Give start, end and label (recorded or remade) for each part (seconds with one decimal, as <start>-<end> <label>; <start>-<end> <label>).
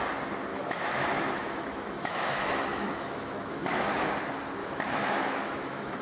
0.0-0.5 recorded; 0.5-4.1 remade; 4.1-4.6 recorded; 4.6-6.0 remade